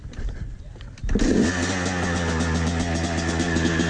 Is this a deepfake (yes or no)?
no